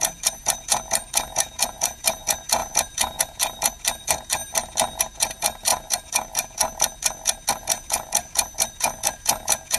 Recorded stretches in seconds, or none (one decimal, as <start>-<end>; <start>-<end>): 4.4-5.0